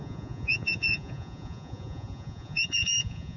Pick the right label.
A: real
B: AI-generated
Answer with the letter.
B